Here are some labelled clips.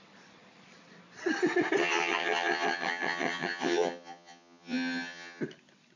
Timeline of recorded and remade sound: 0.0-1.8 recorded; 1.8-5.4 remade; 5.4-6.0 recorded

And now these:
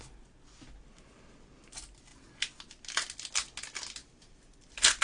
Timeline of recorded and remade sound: 0.0-5.0 recorded

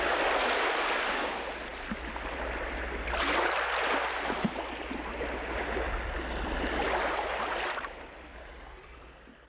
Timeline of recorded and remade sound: 0.0-9.5 recorded

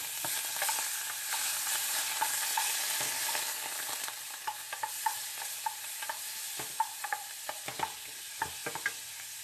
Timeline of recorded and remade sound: 0.0-9.4 recorded

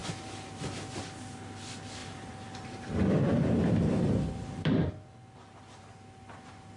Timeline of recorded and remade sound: 0.0-2.0 recorded; 2.0-4.9 remade; 4.9-6.8 recorded

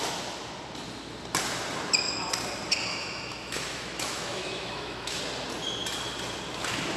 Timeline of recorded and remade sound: 0.0-2.9 recorded; 2.9-5.2 remade; 5.2-7.0 recorded

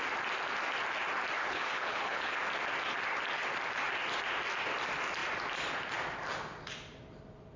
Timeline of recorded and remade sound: 0.0-1.4 recorded; 1.4-2.3 remade; 2.3-7.6 recorded

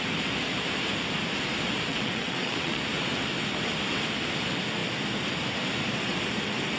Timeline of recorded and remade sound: 0.0-1.9 recorded; 1.9-2.8 remade; 2.8-6.8 recorded